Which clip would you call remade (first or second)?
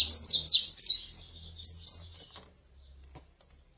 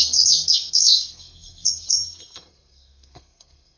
second